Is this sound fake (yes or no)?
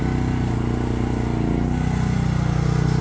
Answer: no